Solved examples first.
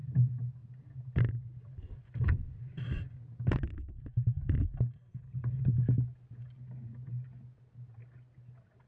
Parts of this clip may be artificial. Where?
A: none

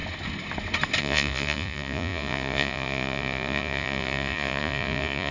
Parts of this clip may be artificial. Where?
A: 1.0-5.3 (vocoder, Vocos)

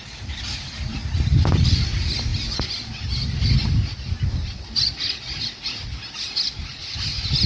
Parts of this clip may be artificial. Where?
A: none

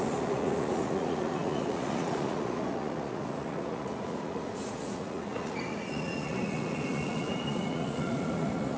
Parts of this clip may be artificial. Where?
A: 0.0-8.8 (vocoder, Vocos)

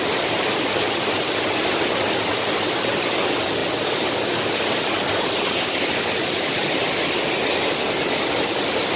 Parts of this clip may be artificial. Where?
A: none